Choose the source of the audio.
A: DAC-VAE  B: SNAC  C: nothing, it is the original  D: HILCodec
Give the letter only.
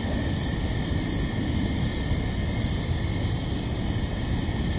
C